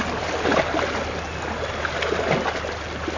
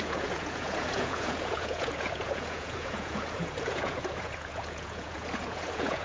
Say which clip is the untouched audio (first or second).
first